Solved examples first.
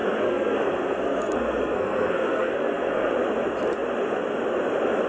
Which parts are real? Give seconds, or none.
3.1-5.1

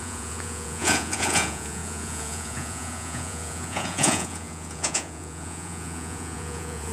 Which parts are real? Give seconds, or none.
none

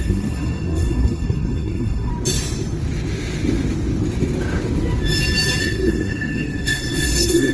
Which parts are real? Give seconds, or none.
2.1-5.6

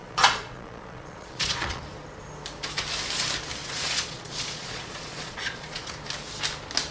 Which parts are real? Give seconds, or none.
1.8-3.6; 5.9-6.9

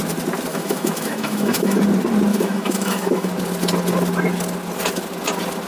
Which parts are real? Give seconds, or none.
0.0-0.5; 1.8-2.3; 3.3-5.7

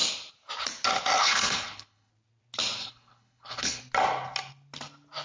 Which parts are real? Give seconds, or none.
0.0-1.2; 2.1-2.8; 3.8-5.2

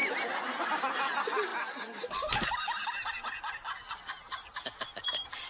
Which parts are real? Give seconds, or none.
0.0-5.5

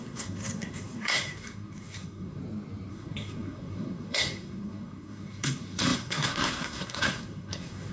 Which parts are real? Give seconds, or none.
2.4-2.9